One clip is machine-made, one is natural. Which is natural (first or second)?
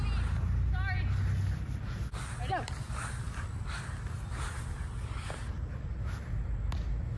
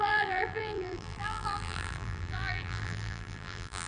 first